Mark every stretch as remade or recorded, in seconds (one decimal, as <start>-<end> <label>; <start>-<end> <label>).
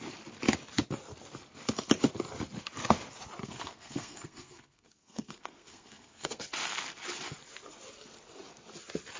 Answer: 0.0-3.4 recorded; 3.4-6.4 remade; 6.4-9.2 recorded